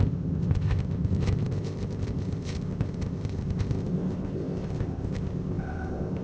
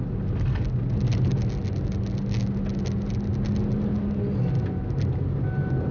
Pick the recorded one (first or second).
second